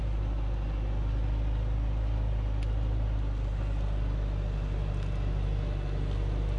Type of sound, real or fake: real